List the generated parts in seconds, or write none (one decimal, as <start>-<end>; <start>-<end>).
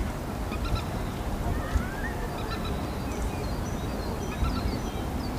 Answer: none